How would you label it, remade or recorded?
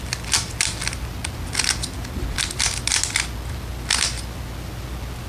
recorded